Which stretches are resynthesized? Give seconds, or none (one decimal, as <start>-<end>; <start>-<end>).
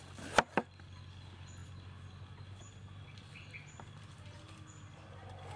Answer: none